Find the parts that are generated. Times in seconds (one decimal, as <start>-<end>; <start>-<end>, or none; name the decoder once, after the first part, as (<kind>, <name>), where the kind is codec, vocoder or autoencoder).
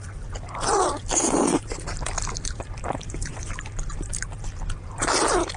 0.7-4.1 (vocoder, BigVGAN v2)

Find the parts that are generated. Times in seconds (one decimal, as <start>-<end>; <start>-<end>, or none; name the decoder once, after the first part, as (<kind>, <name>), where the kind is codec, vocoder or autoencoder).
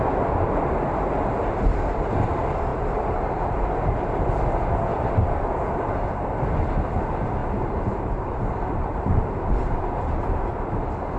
2.7-3.6 (vocoder, BigVGAN v2); 4.9-5.6; 7.4-9.8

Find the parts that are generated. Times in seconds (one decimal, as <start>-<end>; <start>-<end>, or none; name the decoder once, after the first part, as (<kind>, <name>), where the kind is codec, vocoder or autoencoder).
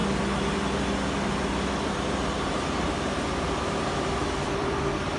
2.9-5.2 (vocoder, BigVGAN v2)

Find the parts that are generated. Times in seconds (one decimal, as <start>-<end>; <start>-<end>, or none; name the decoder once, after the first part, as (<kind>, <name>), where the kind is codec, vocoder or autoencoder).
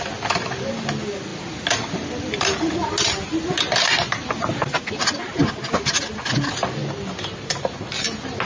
none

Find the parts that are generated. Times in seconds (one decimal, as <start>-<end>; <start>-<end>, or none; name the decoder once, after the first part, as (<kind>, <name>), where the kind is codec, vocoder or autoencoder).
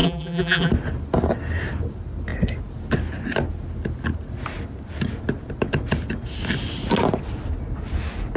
0.0-0.7 (vocoder, BigVGAN v2)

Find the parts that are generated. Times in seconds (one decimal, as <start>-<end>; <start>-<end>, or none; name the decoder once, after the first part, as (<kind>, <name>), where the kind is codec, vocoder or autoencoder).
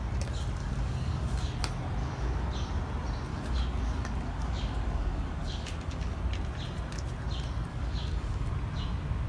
0.6-1.6 (codec, DAC); 2.0-2.5; 3.3-6.2; 7.7-8.5